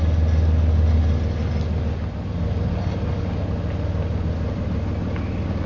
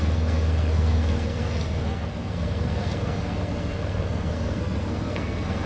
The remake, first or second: second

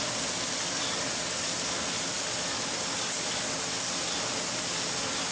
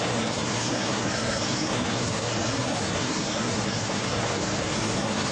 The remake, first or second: second